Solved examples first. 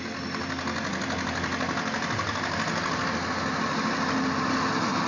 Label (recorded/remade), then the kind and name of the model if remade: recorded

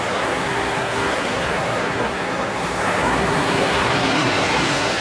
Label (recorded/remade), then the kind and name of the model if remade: remade, codec, SNAC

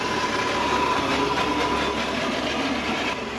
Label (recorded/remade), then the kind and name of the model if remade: recorded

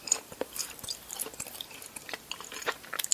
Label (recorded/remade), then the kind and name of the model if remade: remade, vocoder, BigVGAN v2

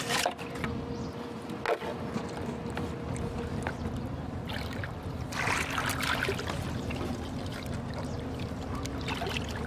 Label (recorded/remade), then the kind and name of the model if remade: recorded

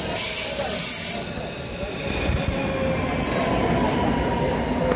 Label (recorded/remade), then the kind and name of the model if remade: recorded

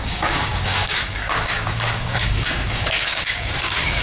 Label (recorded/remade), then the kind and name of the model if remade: remade, codec, DAC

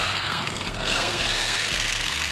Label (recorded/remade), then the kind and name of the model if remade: remade, codec, SNAC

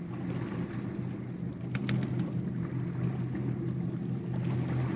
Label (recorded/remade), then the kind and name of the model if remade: recorded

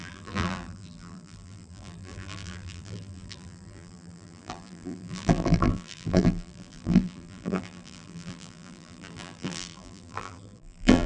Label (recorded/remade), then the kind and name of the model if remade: remade, vocoder, BigVGAN v2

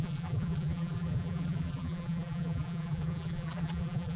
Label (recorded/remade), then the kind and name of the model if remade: remade, vocoder, BigVGAN v2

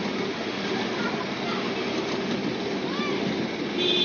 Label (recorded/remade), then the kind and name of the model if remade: recorded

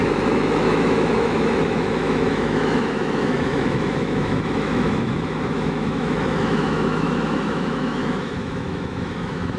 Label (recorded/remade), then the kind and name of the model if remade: remade, autoencoder, DAC-VAE